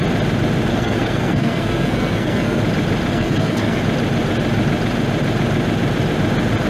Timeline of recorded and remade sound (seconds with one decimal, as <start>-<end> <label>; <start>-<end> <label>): 0.0-0.7 recorded; 0.7-2.6 remade; 2.6-3.1 recorded; 3.1-3.8 remade; 3.8-6.7 recorded